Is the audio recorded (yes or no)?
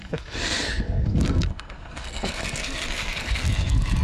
no